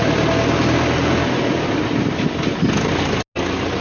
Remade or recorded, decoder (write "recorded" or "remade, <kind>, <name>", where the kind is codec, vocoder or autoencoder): recorded